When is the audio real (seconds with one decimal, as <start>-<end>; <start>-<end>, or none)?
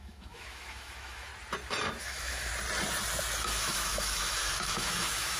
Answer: 1.3-2.0; 2.5-3.4